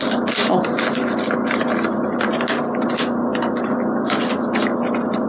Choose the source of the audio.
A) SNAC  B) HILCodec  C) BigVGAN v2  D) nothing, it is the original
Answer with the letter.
D